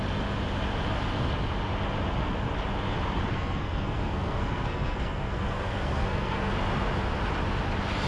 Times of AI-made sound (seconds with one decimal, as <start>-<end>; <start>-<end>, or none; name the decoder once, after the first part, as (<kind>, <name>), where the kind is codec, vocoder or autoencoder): 3.3-6.5 (codec, SNAC)